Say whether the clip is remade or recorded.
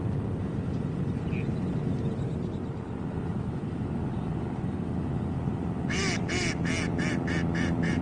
recorded